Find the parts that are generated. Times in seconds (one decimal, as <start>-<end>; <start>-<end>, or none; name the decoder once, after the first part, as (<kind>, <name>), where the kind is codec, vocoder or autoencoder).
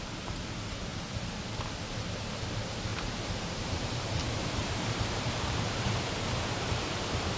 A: 2.9-7.4 (vocoder, BigVGAN v2)